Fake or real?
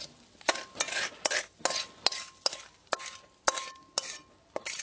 real